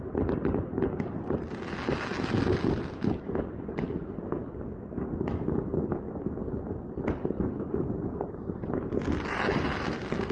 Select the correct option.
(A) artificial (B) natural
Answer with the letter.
B